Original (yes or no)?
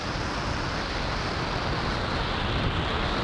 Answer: yes